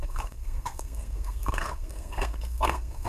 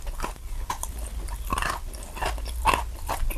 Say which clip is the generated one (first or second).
first